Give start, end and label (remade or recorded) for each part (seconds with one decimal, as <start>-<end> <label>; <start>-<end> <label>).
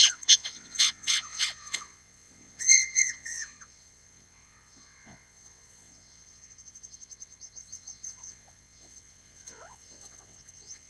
0.0-10.9 remade